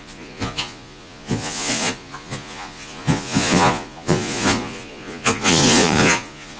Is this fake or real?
fake